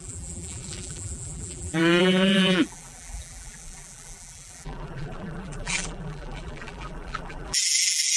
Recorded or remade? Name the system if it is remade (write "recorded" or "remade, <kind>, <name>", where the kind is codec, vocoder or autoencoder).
remade, vocoder, BigVGAN v2